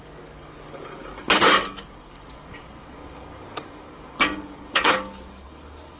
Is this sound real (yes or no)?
no